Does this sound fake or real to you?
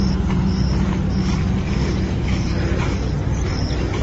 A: real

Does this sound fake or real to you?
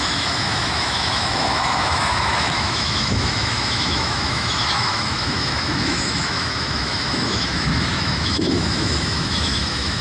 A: fake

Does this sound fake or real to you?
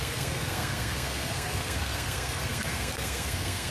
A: fake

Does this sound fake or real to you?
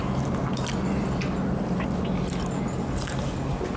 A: real